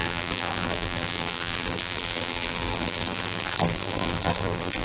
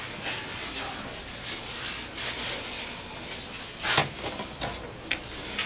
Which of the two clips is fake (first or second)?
first